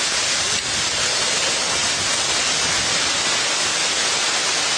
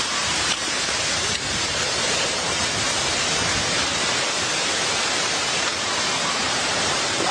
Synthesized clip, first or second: second